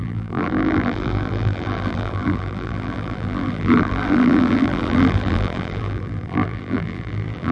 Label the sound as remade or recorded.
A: remade